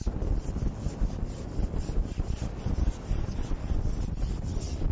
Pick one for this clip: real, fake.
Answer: real